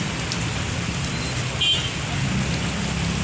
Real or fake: real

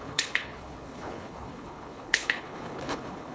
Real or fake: fake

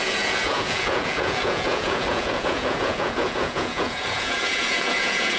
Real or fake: fake